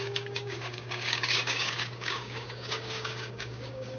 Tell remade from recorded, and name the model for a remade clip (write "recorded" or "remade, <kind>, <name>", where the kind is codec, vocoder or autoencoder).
remade, codec, DAC